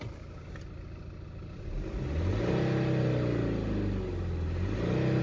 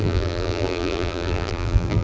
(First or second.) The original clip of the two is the first